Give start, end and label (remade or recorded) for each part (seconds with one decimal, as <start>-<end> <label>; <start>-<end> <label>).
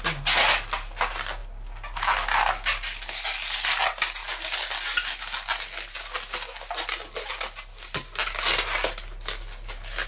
0.0-10.1 recorded